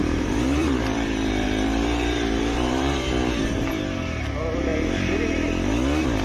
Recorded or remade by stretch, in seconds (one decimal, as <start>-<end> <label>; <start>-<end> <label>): 0.0-3.7 remade; 3.7-6.2 recorded